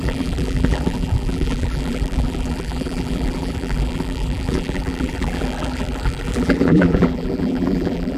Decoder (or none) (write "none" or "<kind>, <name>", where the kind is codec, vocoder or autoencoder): vocoder, BigVGAN v2